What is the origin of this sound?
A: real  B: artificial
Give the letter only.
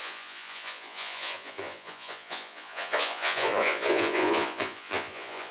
B